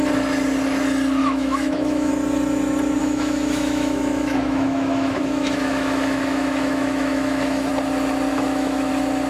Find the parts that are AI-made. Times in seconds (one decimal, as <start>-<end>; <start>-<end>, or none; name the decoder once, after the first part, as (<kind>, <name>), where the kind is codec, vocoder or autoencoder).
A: 1.2-2.1 (autoencoder, DAC-VAE); 3.0-7.7; 8.3-8.9